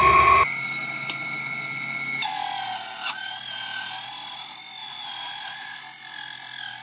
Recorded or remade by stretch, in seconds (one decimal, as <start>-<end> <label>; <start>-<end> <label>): 0.0-4.8 recorded; 4.8-5.8 remade; 5.8-6.8 recorded